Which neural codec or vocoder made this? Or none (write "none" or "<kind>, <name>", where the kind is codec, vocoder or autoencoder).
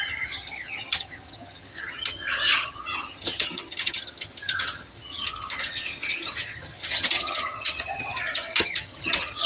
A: vocoder, HiFi-GAN